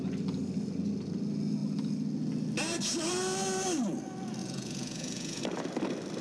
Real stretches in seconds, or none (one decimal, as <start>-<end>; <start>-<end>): 0.0-4.4; 5.4-6.2